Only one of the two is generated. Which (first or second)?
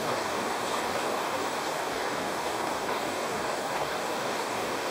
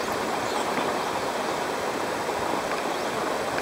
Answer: first